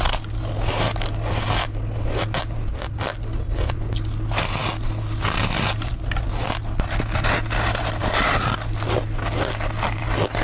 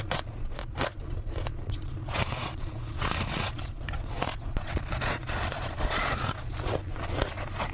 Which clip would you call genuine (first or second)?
first